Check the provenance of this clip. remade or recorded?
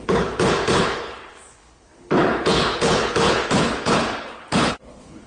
remade